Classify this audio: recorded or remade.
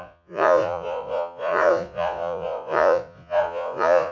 remade